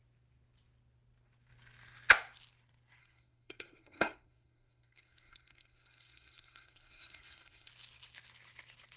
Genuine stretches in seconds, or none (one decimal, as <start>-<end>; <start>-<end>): 0.0-3.0; 7.7-9.0